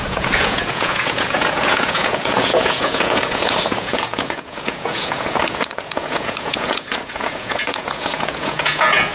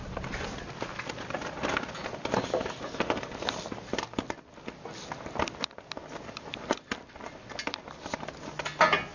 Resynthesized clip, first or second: first